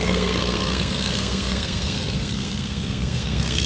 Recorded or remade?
remade